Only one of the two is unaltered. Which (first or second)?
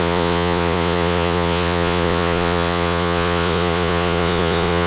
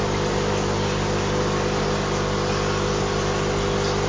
second